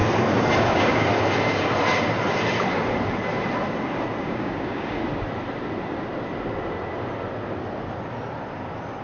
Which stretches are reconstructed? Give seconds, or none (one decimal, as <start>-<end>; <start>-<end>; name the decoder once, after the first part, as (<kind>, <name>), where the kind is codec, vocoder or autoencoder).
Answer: 0.6-1.1 (codec, DAC); 4.2-5.0